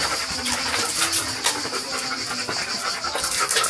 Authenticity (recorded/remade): recorded